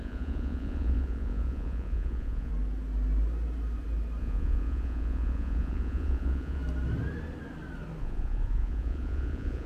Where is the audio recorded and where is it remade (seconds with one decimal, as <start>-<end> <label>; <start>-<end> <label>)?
0.0-2.5 remade; 2.5-4.2 recorded; 4.2-6.6 remade; 6.6-8.0 recorded; 8.0-9.7 remade